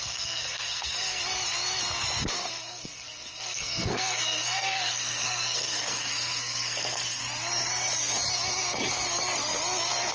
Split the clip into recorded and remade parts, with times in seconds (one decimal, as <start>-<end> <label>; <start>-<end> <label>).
0.0-1.2 remade; 1.2-2.3 recorded; 2.3-7.2 remade; 7.2-10.1 recorded